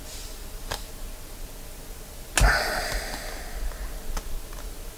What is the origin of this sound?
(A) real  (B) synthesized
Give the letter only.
A